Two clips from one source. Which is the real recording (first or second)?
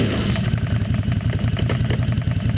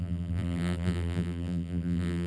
first